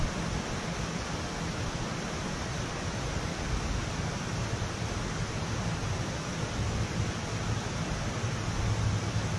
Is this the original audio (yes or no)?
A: yes